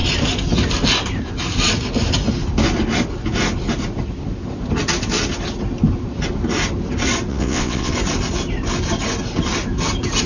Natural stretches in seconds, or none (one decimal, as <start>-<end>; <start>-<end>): 0.0-7.3; 7.9-10.3